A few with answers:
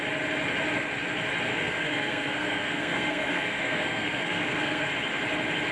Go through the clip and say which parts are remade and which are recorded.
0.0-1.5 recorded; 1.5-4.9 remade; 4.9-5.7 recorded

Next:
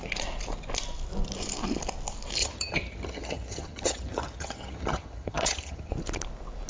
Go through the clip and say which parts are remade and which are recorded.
0.0-2.4 recorded; 2.4-5.9 remade; 5.9-6.7 recorded

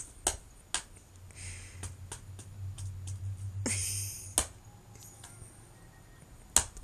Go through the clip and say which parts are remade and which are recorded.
0.0-6.8 recorded

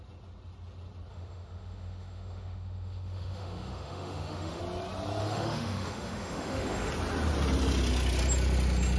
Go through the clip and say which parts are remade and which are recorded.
0.0-1.1 recorded; 1.1-4.6 remade; 4.6-5.2 recorded; 5.2-6.9 remade; 6.9-9.0 recorded

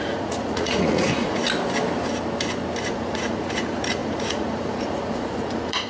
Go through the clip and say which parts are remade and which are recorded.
0.0-1.4 remade; 1.4-2.8 recorded; 2.8-5.9 remade

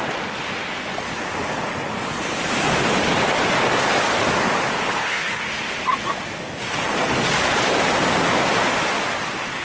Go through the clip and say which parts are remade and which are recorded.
0.0-4.9 recorded; 4.9-5.4 remade; 5.4-9.6 recorded

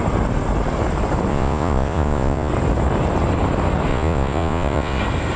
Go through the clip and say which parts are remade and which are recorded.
0.0-1.3 recorded; 1.3-2.5 remade; 2.5-3.9 recorded; 3.9-5.0 remade; 5.0-5.4 recorded